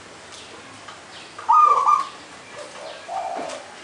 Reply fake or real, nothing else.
real